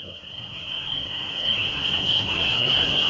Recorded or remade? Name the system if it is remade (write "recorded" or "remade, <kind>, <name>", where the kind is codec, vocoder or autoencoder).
remade, codec, SNAC